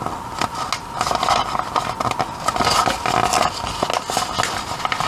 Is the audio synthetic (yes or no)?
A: no